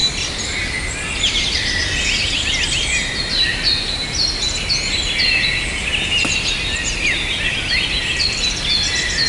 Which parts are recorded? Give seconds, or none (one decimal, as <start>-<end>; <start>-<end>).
0.0-9.3